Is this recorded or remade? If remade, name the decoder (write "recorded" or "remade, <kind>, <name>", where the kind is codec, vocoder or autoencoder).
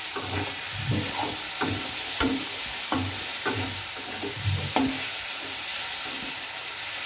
recorded